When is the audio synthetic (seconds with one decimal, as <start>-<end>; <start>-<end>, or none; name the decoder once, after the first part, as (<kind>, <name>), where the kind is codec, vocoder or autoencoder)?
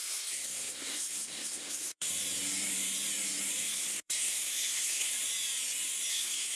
0.0-2.1 (codec, SNAC); 3.6-5.1; 6.1-6.6